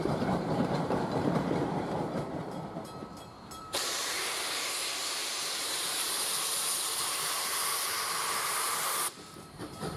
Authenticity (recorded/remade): remade